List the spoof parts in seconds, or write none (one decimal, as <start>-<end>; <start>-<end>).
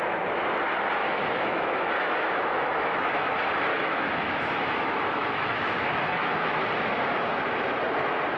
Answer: 1.0-3.3; 3.7-6.6